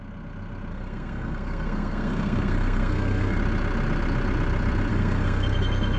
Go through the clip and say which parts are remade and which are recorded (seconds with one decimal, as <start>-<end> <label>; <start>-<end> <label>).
0.0-0.7 recorded; 0.7-3.4 remade; 3.4-4.9 recorded; 4.9-6.0 remade